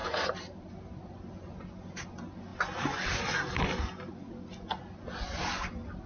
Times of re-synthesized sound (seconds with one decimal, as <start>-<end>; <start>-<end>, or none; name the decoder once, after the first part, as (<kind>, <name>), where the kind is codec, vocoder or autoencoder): 0.0-0.7 (vocoder, BigVGAN v2)